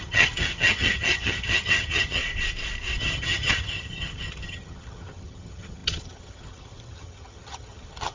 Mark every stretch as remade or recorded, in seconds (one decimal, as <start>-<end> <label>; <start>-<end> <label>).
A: 0.0-2.2 remade; 2.2-3.0 recorded; 3.0-8.1 remade